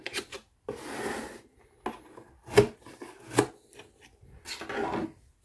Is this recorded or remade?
recorded